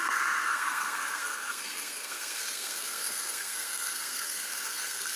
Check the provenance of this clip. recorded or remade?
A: remade